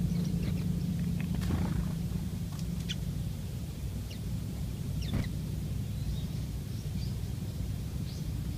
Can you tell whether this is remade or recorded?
remade